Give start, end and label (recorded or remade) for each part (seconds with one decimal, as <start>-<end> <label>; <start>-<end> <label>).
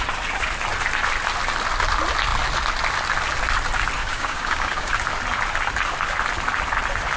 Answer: 0.0-4.0 recorded; 4.0-4.9 remade; 4.9-7.2 recorded